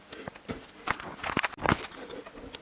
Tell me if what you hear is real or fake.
real